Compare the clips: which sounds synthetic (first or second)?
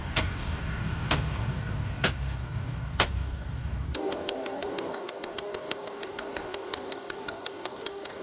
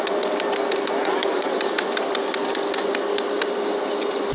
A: first